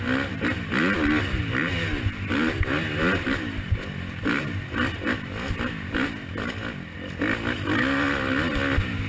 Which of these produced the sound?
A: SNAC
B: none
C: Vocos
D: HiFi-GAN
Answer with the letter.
B